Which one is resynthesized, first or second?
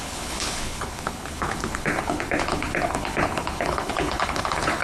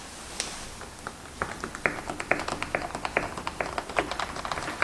first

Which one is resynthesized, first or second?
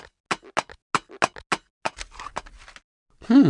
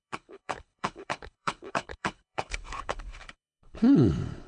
second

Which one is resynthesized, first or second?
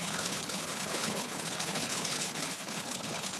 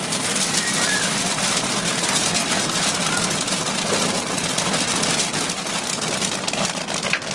first